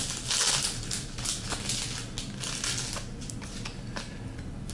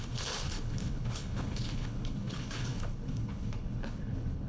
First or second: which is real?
first